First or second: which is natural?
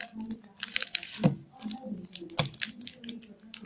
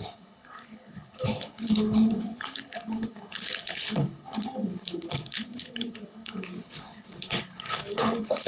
first